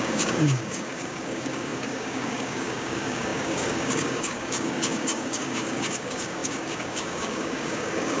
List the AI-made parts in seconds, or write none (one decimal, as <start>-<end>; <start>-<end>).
0.0-8.2